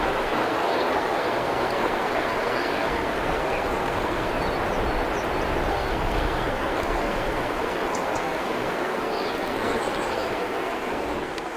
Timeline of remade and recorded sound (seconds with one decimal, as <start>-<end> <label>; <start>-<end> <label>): 0.0-4.3 remade; 4.3-5.7 recorded; 5.7-11.6 remade